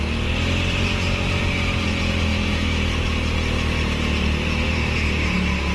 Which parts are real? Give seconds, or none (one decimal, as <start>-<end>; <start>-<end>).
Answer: 0.0-5.7